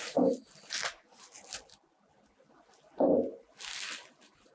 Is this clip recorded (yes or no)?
yes